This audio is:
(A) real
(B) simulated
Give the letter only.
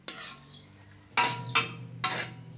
A